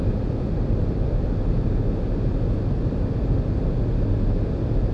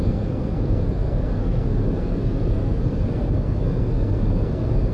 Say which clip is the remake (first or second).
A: second